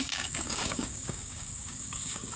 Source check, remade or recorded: remade